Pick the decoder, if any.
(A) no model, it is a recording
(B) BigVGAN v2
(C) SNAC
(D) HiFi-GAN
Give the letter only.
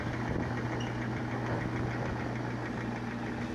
A